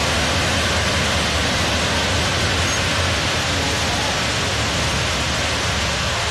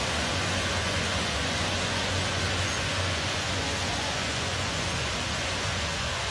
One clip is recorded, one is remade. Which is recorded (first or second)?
first